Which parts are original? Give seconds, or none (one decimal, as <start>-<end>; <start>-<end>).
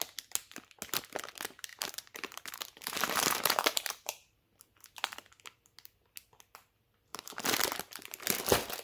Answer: 0.0-1.7; 4.6-7.1; 8.2-8.8